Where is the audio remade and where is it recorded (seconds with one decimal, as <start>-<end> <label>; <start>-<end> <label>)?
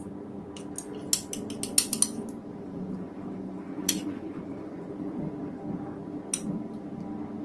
0.0-2.5 recorded; 2.5-5.3 remade; 5.3-7.4 recorded